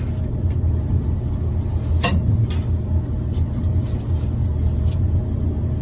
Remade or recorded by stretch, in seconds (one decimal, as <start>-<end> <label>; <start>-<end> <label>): 0.0-4.4 recorded; 4.4-5.2 remade; 5.2-5.8 recorded